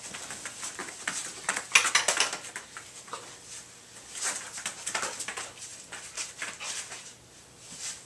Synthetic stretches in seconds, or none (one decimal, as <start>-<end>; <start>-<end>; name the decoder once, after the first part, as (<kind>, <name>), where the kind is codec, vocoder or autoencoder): 5.7-7.6 (vocoder, BigVGAN v2)